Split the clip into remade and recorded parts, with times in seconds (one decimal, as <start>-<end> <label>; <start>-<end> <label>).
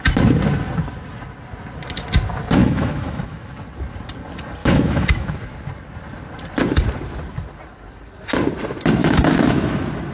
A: 0.0-2.6 recorded; 2.6-3.5 remade; 3.5-4.6 recorded; 4.6-5.3 remade; 5.3-9.0 recorded; 9.0-9.7 remade; 9.7-10.1 recorded